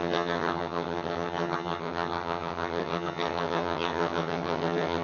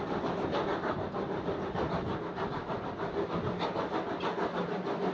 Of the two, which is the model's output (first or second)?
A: first